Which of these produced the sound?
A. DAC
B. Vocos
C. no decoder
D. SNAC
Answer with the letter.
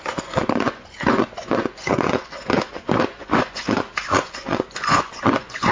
B